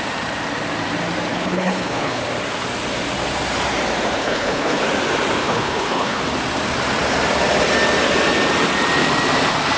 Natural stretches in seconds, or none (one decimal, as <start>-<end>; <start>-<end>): 0.0-1.3; 2.2-4.2; 4.8-5.4; 6.2-9.8